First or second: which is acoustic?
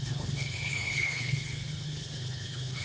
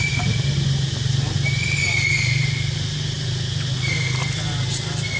second